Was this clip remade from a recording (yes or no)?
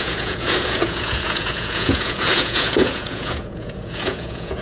yes